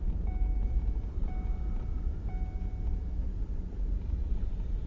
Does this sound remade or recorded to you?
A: recorded